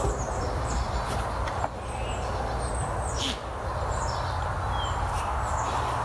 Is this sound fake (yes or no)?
no